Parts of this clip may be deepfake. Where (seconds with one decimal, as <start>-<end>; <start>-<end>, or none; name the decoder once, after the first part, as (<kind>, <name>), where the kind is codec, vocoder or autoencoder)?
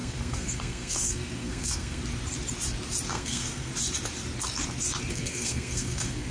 0.0-2.0 (codec, SNAC); 3.1-3.7; 5.1-6.3